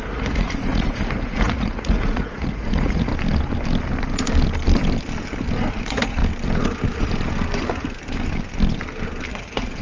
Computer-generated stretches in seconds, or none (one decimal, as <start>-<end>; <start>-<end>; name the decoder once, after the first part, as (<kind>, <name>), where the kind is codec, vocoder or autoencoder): 0.0-3.1 (vocoder, Vocos); 5.7-6.2; 9.3-9.8